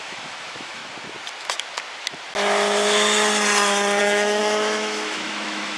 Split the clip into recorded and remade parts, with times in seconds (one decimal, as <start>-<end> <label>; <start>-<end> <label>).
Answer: 0.0-0.8 remade; 0.8-4.0 recorded; 4.0-5.8 remade